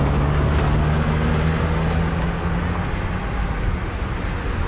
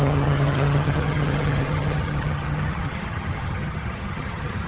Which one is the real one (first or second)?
first